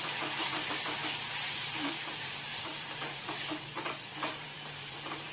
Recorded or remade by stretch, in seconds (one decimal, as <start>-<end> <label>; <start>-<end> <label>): 0.0-1.0 remade; 1.0-1.9 recorded; 1.9-5.3 remade